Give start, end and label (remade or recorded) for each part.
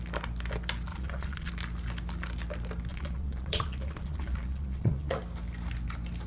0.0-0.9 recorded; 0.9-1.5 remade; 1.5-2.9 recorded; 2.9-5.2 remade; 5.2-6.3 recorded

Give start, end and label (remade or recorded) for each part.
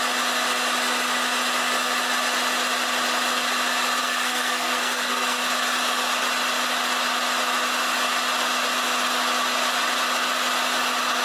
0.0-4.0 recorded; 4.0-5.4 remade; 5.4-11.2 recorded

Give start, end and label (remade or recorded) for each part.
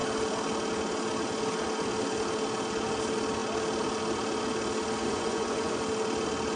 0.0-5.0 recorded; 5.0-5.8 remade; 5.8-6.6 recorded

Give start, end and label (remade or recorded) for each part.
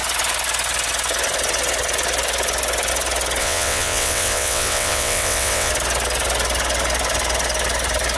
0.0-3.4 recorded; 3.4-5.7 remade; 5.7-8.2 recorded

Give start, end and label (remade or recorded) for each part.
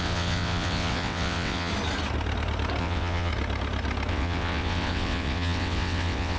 0.0-1.7 remade; 1.7-2.8 recorded; 2.8-3.3 remade; 3.3-4.1 recorded; 4.1-6.4 remade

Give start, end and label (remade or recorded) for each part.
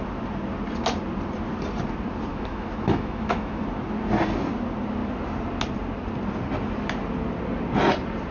0.0-2.3 recorded; 2.3-3.6 remade; 3.6-8.3 recorded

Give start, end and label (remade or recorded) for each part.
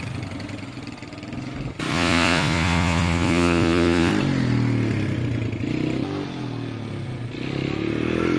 0.0-1.9 recorded; 1.9-4.1 remade; 4.1-8.4 recorded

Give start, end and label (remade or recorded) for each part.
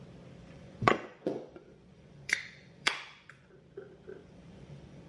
0.0-0.4 recorded; 0.4-3.5 remade; 3.5-4.2 recorded; 4.2-5.1 remade